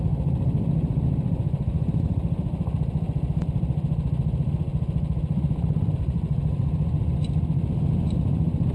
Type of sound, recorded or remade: remade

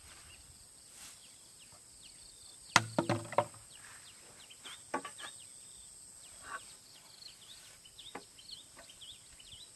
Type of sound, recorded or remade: recorded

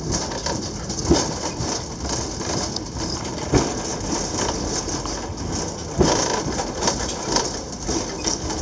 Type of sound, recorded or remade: recorded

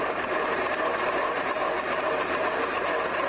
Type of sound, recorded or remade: remade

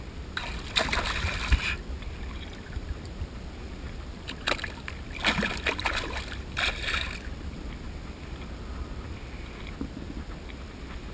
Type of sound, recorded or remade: recorded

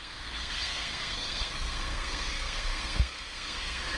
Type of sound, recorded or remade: remade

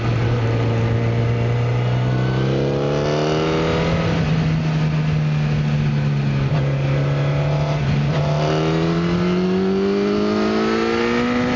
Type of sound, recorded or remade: recorded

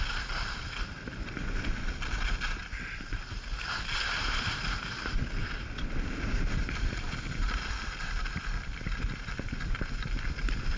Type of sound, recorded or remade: recorded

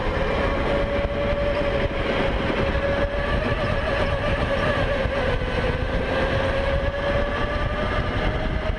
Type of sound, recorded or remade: recorded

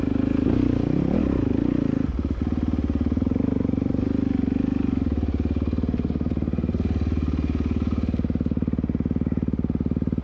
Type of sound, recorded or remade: recorded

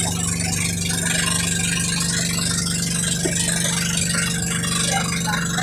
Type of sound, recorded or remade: recorded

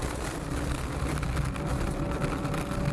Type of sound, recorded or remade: recorded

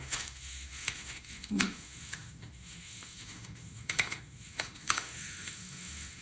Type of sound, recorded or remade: remade